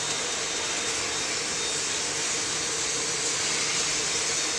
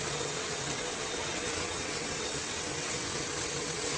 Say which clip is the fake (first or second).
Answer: second